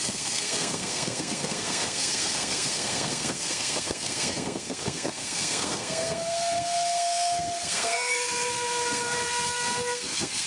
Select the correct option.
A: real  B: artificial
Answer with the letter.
B